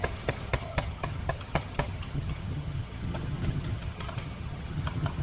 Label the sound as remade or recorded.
remade